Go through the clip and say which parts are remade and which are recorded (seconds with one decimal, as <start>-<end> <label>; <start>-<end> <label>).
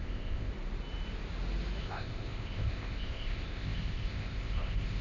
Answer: 0.0-0.5 remade; 0.5-1.8 recorded; 1.8-5.0 remade